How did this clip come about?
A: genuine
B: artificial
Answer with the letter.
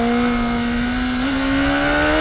A